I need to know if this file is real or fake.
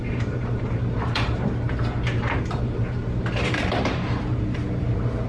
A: fake